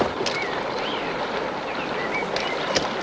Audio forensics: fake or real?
real